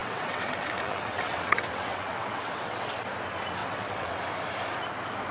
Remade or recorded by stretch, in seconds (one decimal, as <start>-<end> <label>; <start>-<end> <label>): 0.0-3.0 remade; 3.0-3.6 recorded; 3.6-4.2 remade; 4.2-5.3 recorded